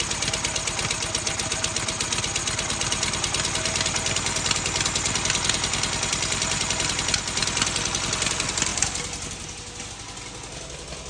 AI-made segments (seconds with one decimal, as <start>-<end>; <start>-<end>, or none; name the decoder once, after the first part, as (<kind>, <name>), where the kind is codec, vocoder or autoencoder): none